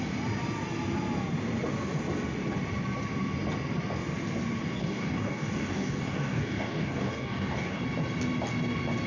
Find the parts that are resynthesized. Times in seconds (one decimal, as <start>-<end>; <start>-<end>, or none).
4.8-7.8